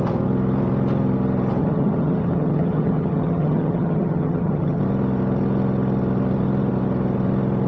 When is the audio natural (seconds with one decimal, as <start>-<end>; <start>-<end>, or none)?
0.0-1.6; 4.8-7.7